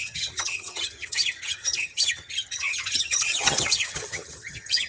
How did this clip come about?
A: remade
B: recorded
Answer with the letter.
A